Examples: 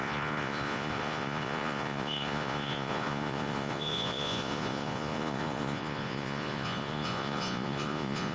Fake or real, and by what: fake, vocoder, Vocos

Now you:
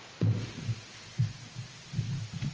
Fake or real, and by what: real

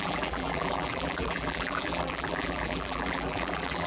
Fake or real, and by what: fake, vocoder, BigVGAN v2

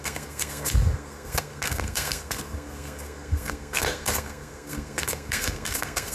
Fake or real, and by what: fake, codec, SNAC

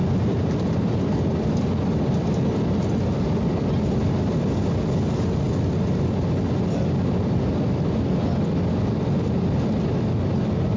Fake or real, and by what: real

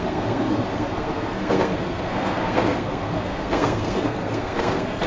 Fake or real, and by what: fake, codec, SNAC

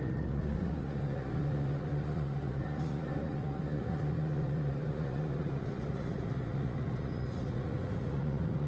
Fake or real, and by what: fake, vocoder, Vocos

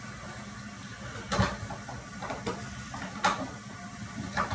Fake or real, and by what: real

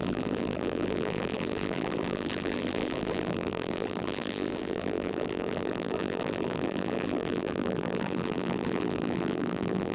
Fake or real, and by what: fake, vocoder, BigVGAN v2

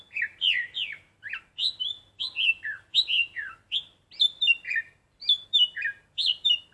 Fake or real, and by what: real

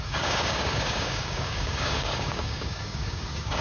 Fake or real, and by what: fake, codec, DAC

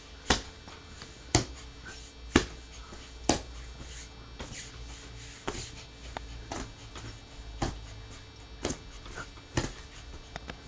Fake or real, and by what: real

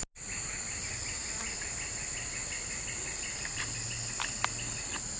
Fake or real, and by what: real